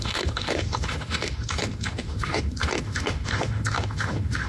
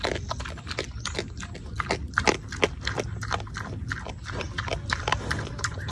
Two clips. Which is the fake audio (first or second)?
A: first